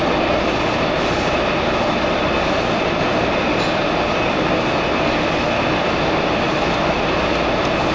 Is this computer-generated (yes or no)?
no